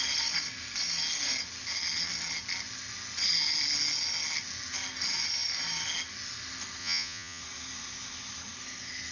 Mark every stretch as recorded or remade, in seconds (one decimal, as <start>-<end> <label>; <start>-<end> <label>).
0.0-6.8 recorded; 6.8-7.4 remade; 7.4-9.1 recorded

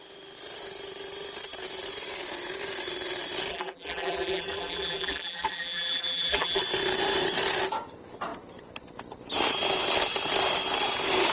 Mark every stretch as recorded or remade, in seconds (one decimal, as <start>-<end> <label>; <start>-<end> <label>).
0.0-3.5 recorded; 3.5-6.6 remade; 6.6-11.3 recorded

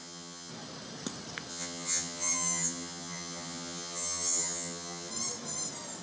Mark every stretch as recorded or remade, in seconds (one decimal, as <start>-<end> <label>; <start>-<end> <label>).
0.0-0.5 remade; 0.5-1.5 recorded; 1.5-5.1 remade; 5.1-6.0 recorded

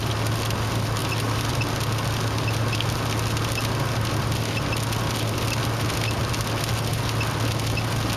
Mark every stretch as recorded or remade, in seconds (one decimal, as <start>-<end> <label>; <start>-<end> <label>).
0.0-8.2 recorded

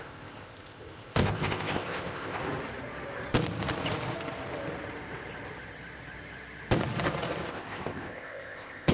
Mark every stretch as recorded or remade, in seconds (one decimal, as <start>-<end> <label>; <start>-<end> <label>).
0.0-2.4 remade; 2.4-7.5 recorded; 7.5-8.9 remade

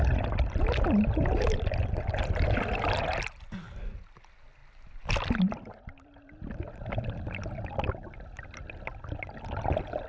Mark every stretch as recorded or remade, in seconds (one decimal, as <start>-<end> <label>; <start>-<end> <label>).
0.0-10.1 recorded

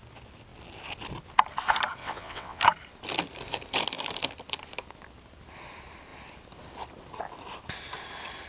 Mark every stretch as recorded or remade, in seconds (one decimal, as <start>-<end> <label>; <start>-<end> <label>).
0.0-2.0 recorded; 2.0-2.6 remade; 2.6-8.5 recorded